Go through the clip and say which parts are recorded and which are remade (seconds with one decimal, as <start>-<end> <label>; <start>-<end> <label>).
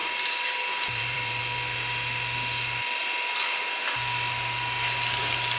0.0-1.4 remade; 1.4-5.6 recorded